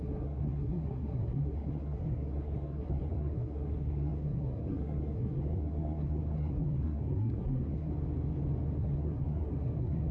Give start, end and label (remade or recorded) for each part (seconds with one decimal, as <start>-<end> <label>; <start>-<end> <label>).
0.0-7.9 remade; 7.9-8.8 recorded; 8.8-10.1 remade